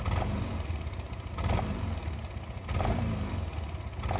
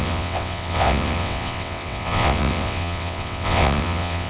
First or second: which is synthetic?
second